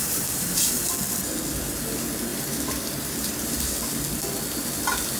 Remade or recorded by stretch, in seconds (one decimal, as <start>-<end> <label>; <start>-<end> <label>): 0.0-0.9 remade; 0.9-2.3 recorded; 2.3-3.7 remade; 3.7-5.2 recorded